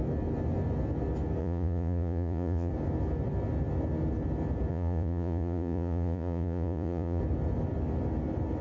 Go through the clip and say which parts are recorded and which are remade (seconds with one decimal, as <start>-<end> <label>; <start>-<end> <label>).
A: 0.0-1.4 recorded; 1.4-2.7 remade; 2.7-4.7 recorded; 4.7-7.2 remade; 7.2-8.6 recorded